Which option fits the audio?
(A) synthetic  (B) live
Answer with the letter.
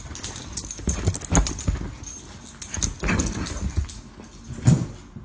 B